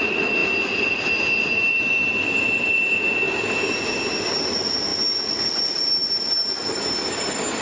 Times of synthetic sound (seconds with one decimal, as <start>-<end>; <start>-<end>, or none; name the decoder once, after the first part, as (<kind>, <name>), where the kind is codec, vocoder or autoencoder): none